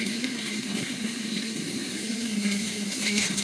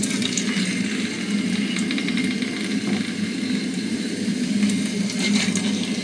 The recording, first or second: second